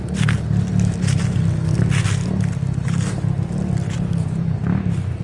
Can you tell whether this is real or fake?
real